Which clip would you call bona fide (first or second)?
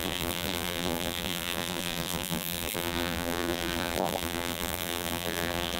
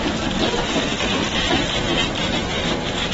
second